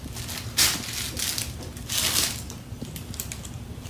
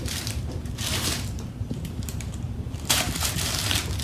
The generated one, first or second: second